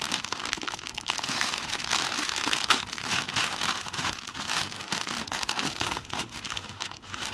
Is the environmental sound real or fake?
fake